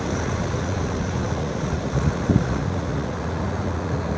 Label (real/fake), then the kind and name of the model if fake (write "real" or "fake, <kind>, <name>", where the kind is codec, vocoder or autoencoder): fake, vocoder, Vocos